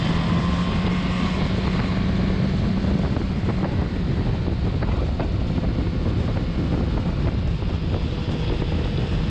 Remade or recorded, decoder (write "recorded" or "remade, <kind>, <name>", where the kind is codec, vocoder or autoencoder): recorded